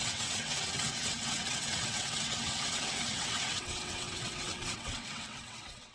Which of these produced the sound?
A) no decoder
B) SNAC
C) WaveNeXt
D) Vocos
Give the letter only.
C